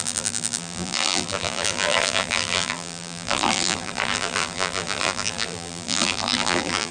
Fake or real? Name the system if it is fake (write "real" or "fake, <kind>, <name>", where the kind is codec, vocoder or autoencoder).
fake, vocoder, BigVGAN v2